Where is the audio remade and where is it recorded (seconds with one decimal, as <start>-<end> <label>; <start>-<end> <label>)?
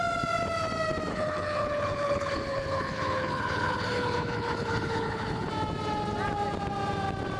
0.0-1.1 recorded; 1.1-5.5 remade; 5.5-7.4 recorded